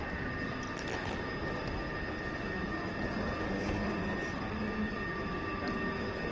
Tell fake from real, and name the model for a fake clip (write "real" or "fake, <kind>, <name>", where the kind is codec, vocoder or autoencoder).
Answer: real